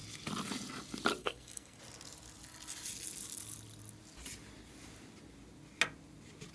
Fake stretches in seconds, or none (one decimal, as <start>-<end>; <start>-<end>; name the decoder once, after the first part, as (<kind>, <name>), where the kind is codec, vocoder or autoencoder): 1.2-1.8 (codec, SNAC)